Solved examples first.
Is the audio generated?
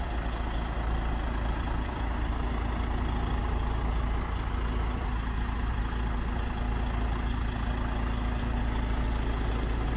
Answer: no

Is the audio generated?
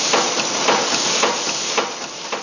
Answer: no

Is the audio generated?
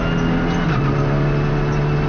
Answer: no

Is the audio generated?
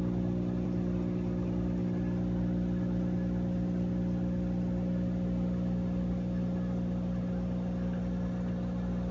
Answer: no